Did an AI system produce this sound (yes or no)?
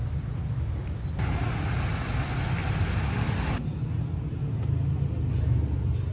no